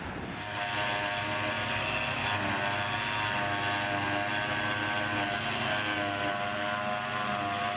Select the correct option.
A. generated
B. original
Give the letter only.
B